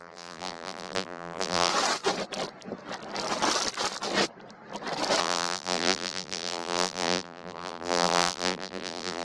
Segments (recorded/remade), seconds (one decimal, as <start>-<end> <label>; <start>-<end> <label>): 0.0-1.7 remade; 1.7-5.2 recorded; 5.2-9.2 remade